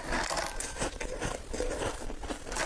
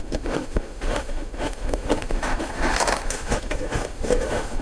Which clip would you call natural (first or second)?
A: first